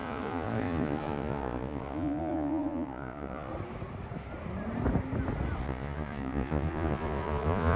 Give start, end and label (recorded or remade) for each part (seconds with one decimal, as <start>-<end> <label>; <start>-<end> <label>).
0.0-3.5 remade; 3.5-5.6 recorded; 5.6-7.8 remade